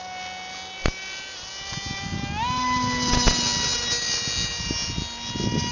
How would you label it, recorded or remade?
recorded